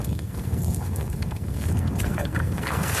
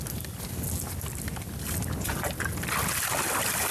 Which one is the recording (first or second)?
second